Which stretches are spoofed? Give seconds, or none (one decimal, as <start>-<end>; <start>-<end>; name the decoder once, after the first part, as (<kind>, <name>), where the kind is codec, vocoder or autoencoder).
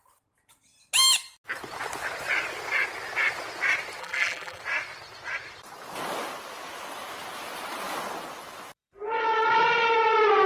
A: 4.0-4.6 (vocoder, BigVGAN v2)